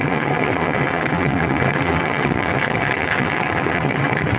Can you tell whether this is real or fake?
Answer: fake